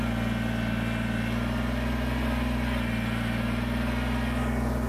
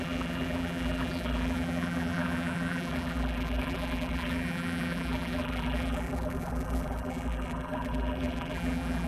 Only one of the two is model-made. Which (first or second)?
second